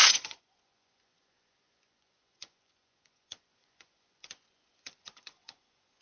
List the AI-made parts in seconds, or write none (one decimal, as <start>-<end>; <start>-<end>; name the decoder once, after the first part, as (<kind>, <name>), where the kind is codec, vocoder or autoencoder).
0.0-6.0 (vocoder, Vocos)